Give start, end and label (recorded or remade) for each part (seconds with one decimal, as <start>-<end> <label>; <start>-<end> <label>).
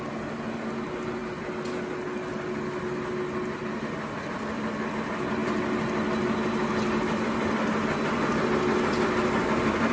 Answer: 0.0-9.9 recorded